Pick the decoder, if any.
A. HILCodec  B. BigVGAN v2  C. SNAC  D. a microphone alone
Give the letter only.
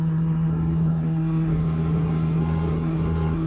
C